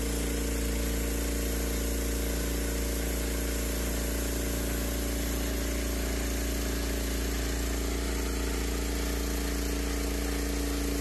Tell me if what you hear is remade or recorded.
recorded